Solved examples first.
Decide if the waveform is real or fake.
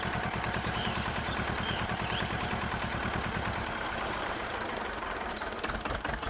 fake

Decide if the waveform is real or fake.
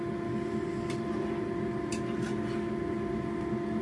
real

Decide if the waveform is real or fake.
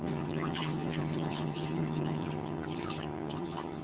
fake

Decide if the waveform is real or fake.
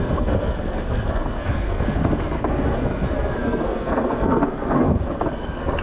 fake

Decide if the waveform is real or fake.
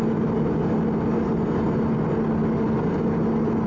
real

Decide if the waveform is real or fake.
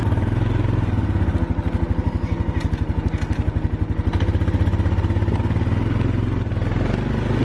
real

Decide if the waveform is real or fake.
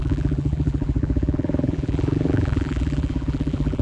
fake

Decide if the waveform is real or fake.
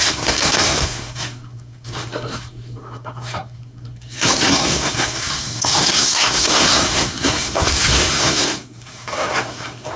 fake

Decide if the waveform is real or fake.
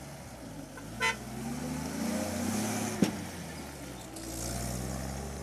real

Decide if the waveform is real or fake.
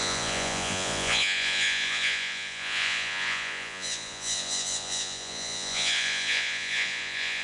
fake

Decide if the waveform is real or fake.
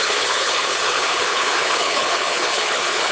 fake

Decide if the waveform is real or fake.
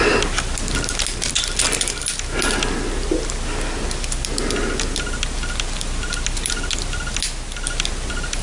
real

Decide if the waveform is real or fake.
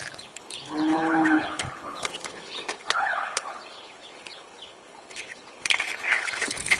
fake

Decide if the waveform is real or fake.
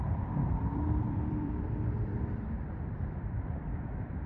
fake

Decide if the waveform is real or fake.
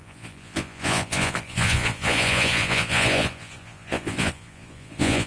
fake